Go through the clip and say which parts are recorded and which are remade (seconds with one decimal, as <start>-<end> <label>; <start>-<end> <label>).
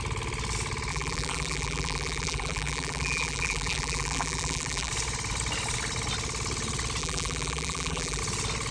0.0-0.9 recorded; 0.9-4.9 remade; 4.9-7.0 recorded; 7.0-8.2 remade; 8.2-8.7 recorded